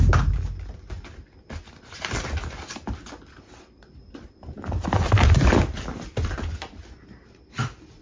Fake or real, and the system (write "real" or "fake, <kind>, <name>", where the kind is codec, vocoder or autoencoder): real